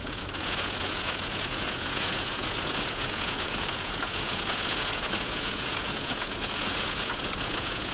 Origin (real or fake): fake